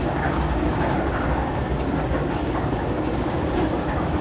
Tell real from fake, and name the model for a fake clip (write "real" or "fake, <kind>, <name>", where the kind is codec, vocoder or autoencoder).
fake, codec, DAC